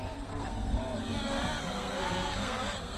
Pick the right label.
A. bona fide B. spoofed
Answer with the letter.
B